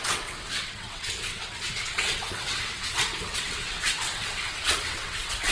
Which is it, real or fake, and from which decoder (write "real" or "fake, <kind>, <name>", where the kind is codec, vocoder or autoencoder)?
fake, vocoder, WaveNeXt